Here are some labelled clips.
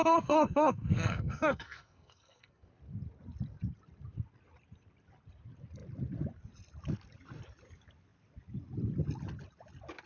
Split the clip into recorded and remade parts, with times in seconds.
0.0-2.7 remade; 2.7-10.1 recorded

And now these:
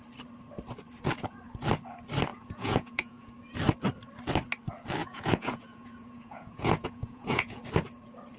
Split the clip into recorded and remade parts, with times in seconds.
0.0-2.3 recorded; 2.3-3.3 remade; 3.3-5.0 recorded; 5.0-7.6 remade; 7.6-8.4 recorded

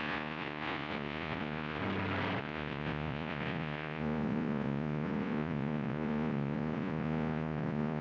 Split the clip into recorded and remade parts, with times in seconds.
0.0-1.8 remade; 1.8-2.4 recorded; 2.4-8.0 remade

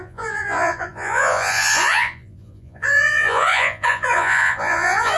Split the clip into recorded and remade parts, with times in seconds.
0.0-5.2 remade

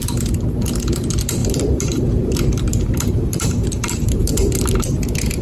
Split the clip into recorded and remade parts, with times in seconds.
0.0-1.4 recorded; 1.4-4.6 remade; 4.6-5.4 recorded

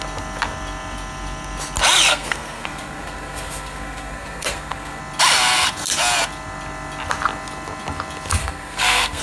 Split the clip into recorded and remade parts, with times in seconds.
0.0-2.1 recorded; 2.1-5.0 remade; 5.0-8.4 recorded; 8.4-9.2 remade